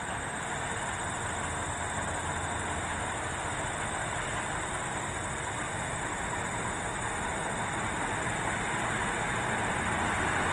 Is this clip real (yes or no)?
yes